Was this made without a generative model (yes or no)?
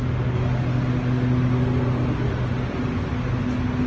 yes